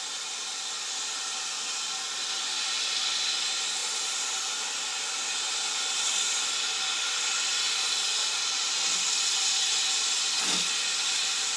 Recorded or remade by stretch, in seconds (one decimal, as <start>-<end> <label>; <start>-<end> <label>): 0.0-11.6 recorded